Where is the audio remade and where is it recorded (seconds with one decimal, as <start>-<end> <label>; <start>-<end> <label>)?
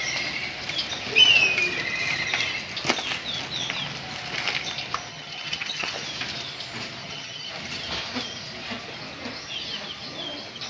0.0-5.1 recorded; 5.1-5.9 remade; 5.9-7.0 recorded; 7.0-7.5 remade; 7.5-10.7 recorded